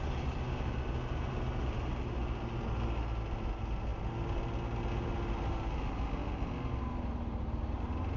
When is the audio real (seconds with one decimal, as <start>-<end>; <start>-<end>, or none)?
0.0-8.2